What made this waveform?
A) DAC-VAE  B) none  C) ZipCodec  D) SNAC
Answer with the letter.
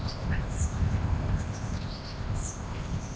C